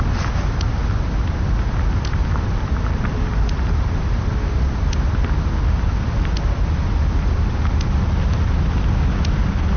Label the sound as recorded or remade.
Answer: recorded